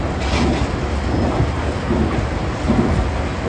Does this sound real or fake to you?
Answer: real